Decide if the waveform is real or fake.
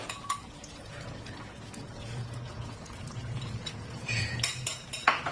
fake